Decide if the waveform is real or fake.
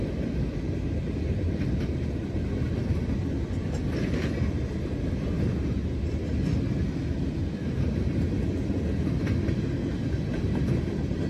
real